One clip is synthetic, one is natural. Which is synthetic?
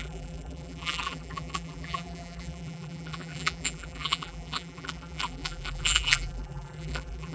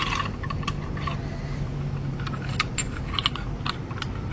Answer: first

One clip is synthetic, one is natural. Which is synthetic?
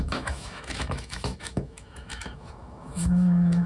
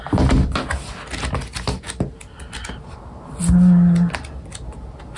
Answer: first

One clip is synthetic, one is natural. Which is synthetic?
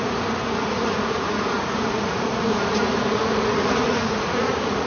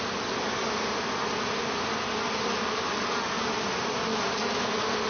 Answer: first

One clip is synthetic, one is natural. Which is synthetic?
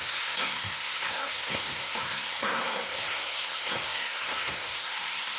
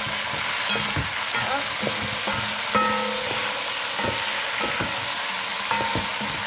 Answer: first